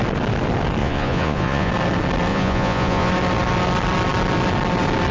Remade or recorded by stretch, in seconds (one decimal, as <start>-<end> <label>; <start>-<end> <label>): 0.0-0.8 recorded; 0.8-1.7 remade; 1.7-2.3 recorded; 2.3-3.1 remade; 3.1-5.1 recorded